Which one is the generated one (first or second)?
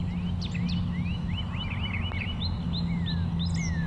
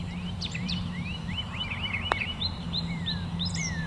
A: second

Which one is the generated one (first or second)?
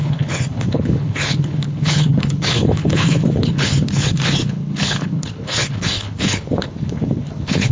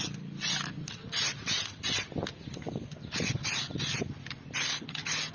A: first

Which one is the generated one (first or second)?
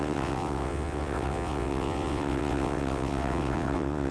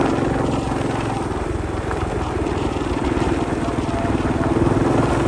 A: first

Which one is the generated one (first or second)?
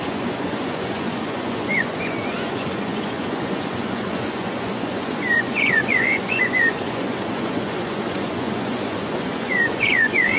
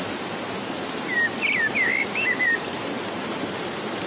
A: first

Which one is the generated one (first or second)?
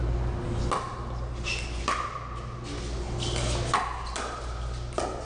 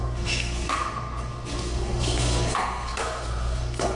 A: second